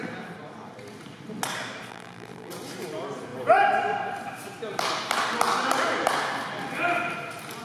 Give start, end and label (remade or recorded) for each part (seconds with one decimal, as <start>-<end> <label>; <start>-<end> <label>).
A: 0.0-1.9 recorded; 1.9-2.5 remade; 2.5-7.6 recorded